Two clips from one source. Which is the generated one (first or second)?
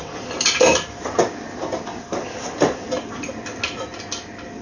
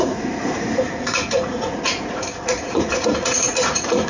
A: second